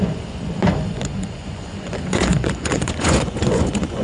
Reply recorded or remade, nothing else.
remade